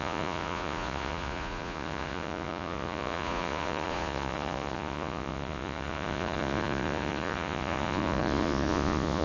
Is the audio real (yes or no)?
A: no